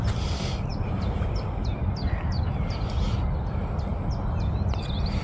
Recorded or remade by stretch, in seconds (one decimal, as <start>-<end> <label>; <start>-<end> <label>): 0.0-5.2 remade